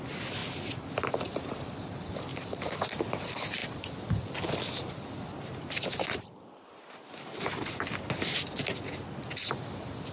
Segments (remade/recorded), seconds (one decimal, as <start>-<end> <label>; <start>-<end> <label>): 0.0-0.4 recorded; 0.4-1.9 remade; 1.9-2.3 recorded; 2.3-3.2 remade; 3.2-10.1 recorded